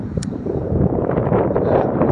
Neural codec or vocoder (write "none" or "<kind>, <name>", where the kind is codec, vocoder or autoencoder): vocoder, BigVGAN v2